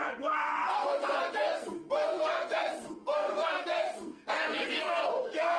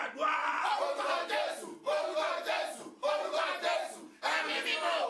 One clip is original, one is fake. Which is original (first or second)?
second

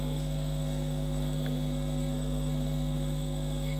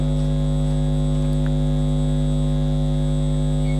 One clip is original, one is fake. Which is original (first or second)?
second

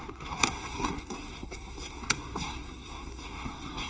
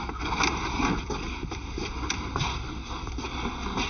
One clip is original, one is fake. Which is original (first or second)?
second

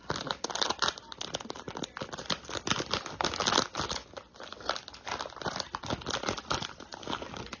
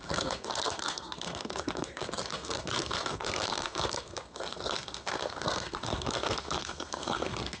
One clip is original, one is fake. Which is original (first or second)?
first